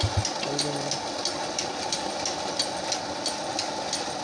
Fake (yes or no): no